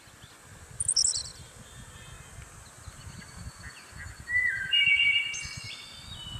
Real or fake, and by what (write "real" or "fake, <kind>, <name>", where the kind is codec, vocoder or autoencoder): real